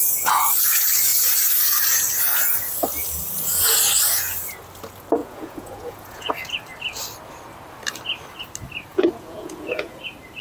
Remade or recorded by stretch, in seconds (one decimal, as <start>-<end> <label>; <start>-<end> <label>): 0.0-5.2 recorded; 5.2-6.3 remade; 6.3-8.9 recorded; 8.9-10.0 remade; 10.0-10.4 recorded